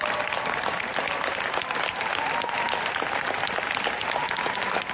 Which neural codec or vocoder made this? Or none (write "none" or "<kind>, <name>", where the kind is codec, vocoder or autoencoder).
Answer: none